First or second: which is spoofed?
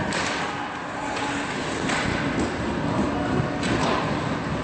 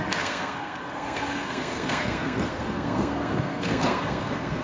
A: second